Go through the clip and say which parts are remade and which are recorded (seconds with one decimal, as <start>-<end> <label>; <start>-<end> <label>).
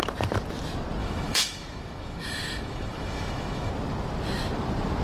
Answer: 0.0-1.0 recorded; 1.0-3.7 remade; 3.7-5.0 recorded